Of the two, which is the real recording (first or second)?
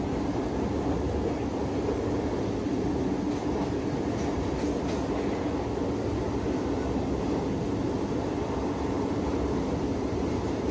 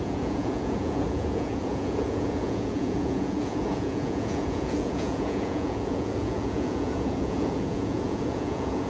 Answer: first